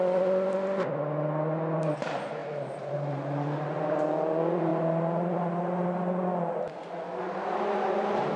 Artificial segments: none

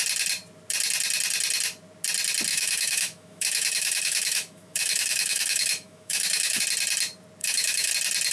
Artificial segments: 2.5-6.6 (autoencoder, DAC-VAE); 7.4-7.9